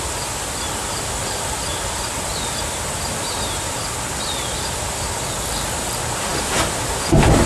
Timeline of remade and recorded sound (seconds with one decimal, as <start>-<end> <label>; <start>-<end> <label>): 0.0-7.5 recorded